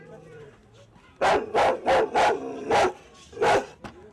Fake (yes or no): no